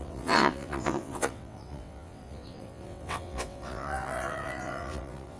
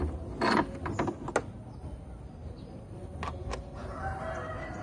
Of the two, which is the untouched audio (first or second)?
second